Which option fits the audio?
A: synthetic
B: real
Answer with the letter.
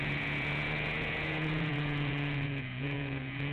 A